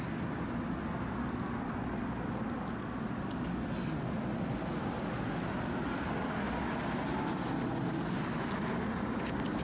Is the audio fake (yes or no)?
no